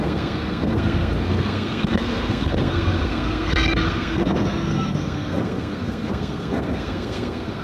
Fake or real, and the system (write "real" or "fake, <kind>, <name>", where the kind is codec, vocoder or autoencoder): fake, codec, SNAC